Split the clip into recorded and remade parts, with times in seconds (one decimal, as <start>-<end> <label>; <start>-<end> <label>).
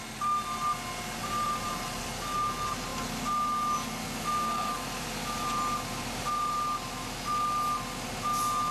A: 0.0-1.2 recorded; 1.2-2.0 remade; 2.0-8.7 recorded